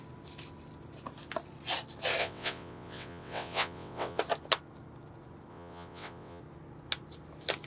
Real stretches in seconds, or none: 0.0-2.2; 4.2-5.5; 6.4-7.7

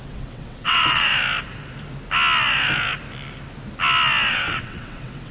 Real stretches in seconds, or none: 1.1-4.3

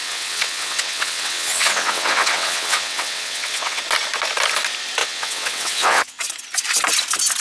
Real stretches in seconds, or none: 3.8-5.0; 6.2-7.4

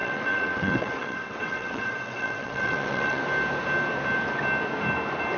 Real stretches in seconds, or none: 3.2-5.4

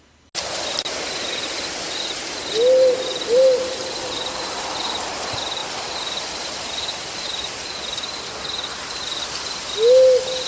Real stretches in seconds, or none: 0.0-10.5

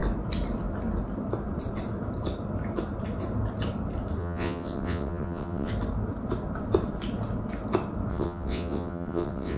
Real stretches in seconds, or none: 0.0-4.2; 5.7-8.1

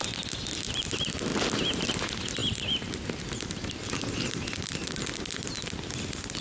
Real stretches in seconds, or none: 0.0-6.4

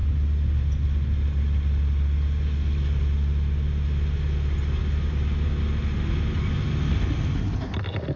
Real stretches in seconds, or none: 0.0-8.2